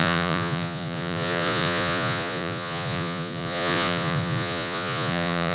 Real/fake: fake